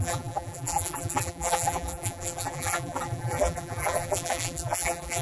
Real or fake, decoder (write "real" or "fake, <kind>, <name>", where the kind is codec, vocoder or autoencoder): fake, vocoder, BigVGAN v2